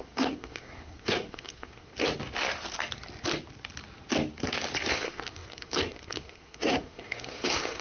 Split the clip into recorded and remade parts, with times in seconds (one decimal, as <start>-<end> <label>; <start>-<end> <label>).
0.0-1.9 remade; 1.9-4.9 recorded; 4.9-7.8 remade